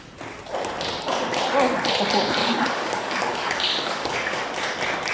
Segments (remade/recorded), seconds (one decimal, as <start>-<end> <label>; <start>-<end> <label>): 0.0-2.4 recorded; 2.4-4.4 remade; 4.4-5.1 recorded